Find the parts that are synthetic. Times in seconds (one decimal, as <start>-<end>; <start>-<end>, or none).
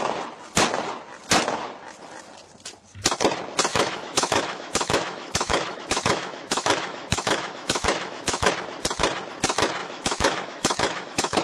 3.7-8.5; 9.8-11.4